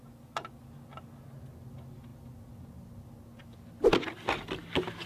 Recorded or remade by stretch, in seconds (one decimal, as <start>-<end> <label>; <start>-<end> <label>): 0.0-5.1 recorded